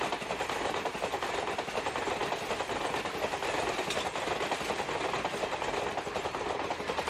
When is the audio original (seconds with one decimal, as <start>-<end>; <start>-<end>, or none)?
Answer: 0.0-7.1